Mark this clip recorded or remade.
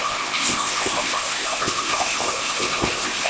remade